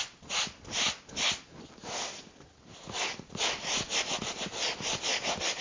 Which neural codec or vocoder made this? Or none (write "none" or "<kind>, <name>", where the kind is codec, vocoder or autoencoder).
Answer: none